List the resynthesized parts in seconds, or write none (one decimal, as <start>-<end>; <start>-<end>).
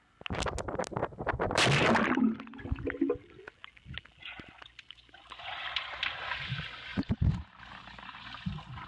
6.9-7.8